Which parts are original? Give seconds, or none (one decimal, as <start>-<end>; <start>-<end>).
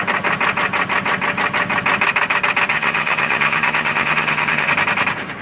0.0-2.7; 4.7-5.4